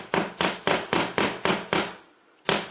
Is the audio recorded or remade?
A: recorded